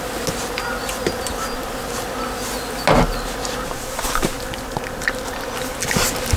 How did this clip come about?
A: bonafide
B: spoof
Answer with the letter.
A